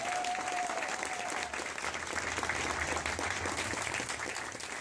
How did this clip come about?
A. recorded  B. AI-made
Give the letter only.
A